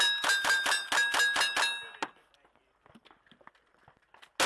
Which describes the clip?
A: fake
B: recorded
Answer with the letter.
B